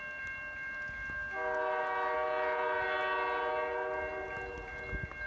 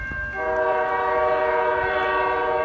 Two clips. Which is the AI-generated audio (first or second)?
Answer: second